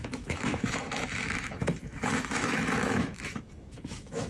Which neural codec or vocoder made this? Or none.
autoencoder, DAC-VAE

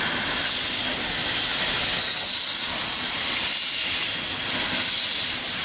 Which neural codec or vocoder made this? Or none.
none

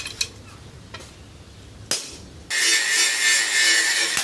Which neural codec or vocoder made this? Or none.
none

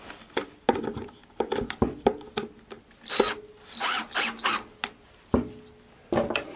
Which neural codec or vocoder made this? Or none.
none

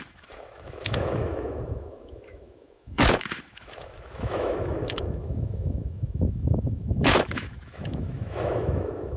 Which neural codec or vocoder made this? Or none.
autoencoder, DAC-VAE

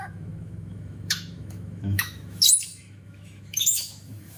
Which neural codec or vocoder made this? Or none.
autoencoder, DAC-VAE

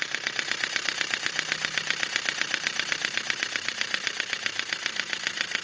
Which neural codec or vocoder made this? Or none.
none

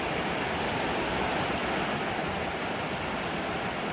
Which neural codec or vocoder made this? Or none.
none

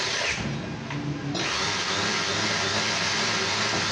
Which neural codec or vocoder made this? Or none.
none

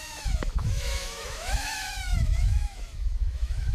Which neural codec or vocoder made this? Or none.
autoencoder, DAC-VAE